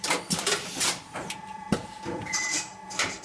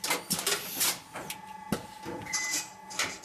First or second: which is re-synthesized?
first